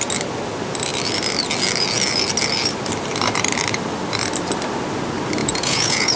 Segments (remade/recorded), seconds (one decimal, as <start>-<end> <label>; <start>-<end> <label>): 0.0-5.4 recorded; 5.4-6.2 remade